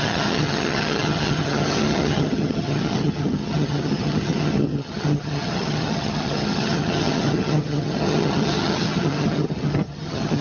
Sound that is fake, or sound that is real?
fake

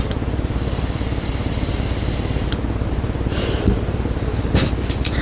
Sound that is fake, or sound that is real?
real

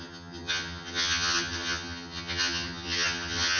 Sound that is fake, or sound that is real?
fake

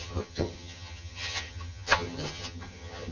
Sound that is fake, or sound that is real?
fake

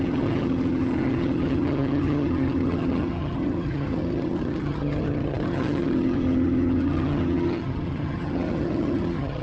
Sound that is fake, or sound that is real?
fake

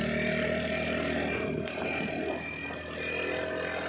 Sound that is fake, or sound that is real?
real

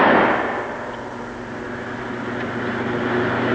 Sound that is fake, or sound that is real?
real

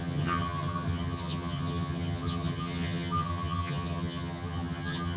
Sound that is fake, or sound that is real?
fake